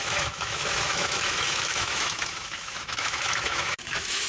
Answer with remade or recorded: remade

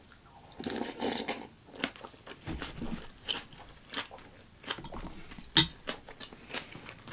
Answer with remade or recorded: recorded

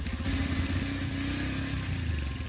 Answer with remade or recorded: recorded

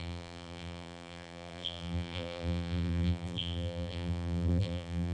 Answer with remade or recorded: remade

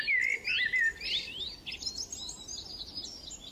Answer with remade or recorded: recorded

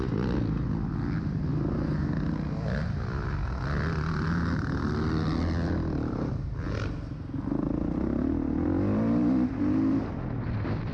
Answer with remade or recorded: recorded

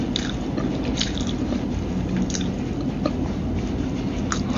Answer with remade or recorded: recorded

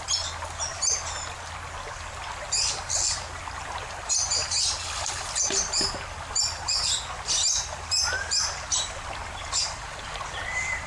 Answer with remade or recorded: recorded